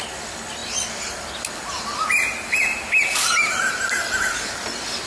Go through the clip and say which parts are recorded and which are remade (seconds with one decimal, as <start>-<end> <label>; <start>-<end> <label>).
0.0-5.1 recorded

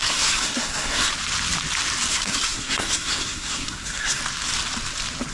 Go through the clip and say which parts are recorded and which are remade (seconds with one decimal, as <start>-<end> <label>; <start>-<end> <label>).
0.0-1.1 remade; 1.1-2.1 recorded; 2.1-4.2 remade; 4.2-5.3 recorded